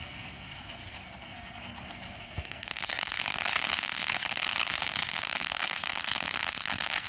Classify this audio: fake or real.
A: fake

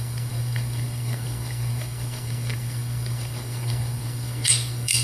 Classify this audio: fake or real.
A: fake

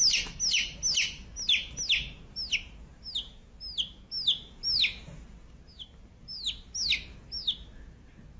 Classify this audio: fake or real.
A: real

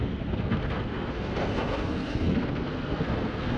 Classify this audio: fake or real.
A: fake